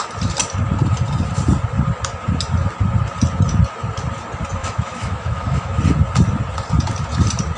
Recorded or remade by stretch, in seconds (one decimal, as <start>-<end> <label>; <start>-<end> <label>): 0.0-4.6 recorded; 4.6-5.8 remade; 5.8-7.6 recorded